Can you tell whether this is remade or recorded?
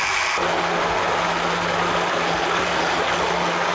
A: recorded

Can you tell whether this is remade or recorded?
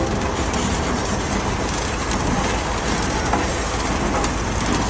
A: recorded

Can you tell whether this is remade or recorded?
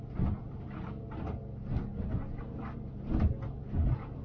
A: recorded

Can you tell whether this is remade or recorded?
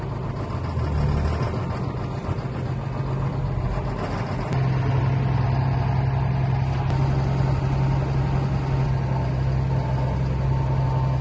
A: recorded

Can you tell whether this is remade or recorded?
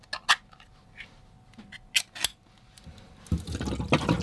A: recorded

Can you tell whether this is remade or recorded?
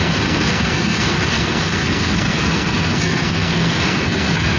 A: remade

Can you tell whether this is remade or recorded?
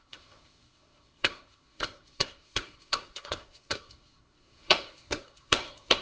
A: remade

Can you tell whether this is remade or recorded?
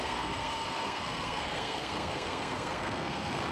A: remade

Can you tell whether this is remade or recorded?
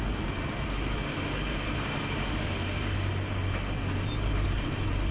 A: recorded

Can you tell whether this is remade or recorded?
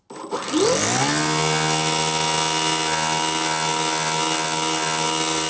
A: recorded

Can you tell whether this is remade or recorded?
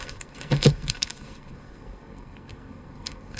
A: remade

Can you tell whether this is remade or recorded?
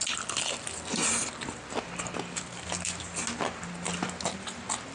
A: recorded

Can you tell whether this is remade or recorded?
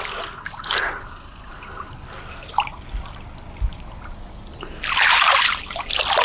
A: recorded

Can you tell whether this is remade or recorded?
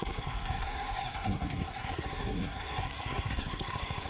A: remade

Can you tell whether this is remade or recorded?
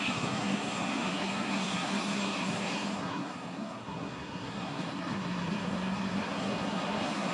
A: remade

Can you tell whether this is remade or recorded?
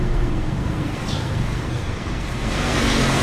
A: remade